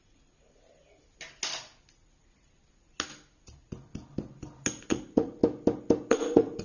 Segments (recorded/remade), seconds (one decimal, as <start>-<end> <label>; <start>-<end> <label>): 0.0-0.8 remade; 0.8-4.8 recorded; 4.8-5.4 remade; 5.4-6.1 recorded; 6.1-6.6 remade